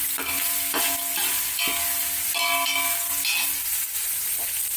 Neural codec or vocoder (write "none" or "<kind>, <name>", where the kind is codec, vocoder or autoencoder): none